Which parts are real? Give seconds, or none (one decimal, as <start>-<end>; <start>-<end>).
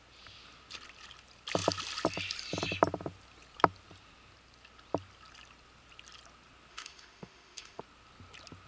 0.0-6.7; 7.8-8.7